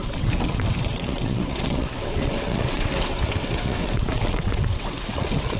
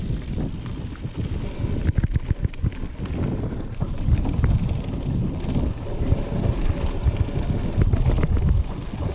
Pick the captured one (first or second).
second